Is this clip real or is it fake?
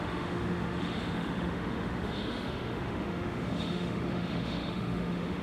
fake